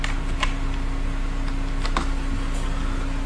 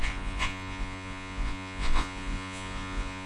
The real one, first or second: first